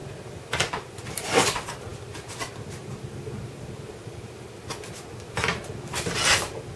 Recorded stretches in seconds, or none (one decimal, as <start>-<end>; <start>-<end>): 0.0-6.8